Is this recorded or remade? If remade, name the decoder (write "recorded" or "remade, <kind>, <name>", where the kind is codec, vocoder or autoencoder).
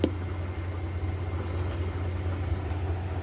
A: recorded